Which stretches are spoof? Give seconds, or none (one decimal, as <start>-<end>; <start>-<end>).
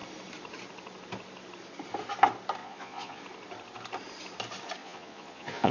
2.6-3.2; 4.8-5.7